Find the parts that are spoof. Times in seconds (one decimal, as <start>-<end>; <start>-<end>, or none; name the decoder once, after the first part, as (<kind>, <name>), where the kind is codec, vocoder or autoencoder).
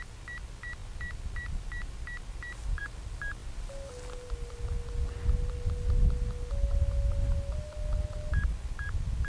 none